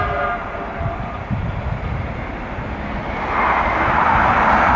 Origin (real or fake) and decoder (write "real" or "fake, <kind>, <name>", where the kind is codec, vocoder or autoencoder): real